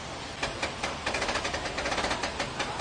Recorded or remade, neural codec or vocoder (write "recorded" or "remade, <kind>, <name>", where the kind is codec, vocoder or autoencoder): recorded